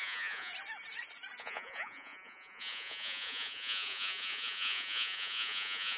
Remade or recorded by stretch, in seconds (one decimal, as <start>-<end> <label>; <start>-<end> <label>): 0.0-0.5 remade; 0.5-1.4 recorded; 1.4-6.0 remade